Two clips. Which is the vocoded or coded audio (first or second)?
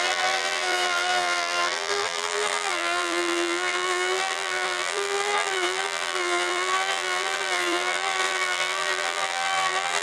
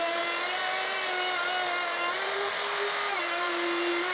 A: first